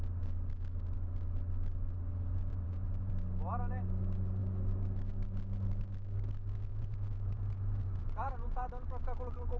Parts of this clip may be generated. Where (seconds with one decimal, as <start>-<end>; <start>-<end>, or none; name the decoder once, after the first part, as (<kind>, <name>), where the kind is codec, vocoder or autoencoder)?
2.5-3.1 (vocoder, Vocos); 6.7-8.7